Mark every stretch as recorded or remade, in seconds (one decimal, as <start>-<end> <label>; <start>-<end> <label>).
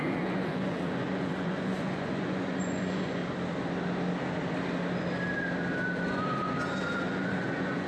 0.0-3.2 remade; 3.2-6.1 recorded; 6.1-7.9 remade